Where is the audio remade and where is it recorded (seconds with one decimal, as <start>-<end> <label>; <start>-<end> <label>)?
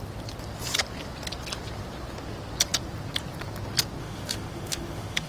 0.0-4.0 recorded; 4.0-5.3 remade